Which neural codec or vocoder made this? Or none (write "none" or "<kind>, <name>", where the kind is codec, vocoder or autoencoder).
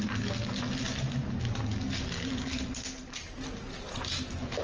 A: none